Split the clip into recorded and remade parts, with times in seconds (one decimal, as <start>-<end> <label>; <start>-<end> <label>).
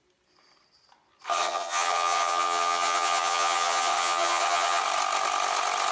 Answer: 0.0-1.3 recorded; 1.3-4.8 remade; 4.8-5.9 recorded